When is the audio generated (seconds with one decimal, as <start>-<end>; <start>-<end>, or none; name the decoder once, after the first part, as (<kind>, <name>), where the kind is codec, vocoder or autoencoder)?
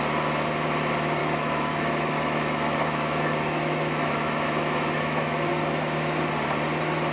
1.2-5.5 (autoencoder, DAC-VAE)